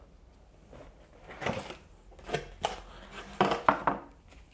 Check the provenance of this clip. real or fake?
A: real